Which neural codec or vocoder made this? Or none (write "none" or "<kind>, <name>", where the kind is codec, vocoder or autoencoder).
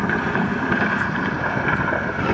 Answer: none